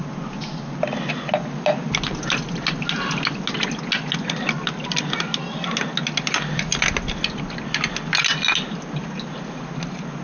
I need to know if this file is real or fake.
real